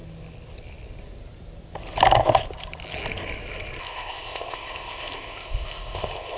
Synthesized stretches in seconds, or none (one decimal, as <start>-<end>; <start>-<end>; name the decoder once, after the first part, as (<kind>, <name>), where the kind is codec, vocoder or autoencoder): 3.8-6.4 (codec, ZipCodec)